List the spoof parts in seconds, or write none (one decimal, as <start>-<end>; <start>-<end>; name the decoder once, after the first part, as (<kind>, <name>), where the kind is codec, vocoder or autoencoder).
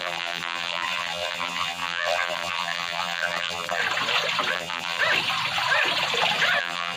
0.0-3.8 (vocoder, BigVGAN v2); 4.5-5.0; 6.6-7.0